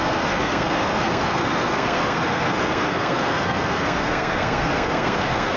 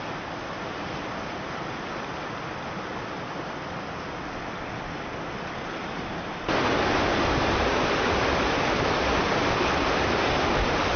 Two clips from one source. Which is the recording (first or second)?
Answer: second